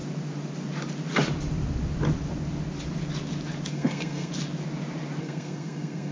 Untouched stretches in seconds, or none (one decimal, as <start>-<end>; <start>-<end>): 0.0-3.7; 4.3-5.2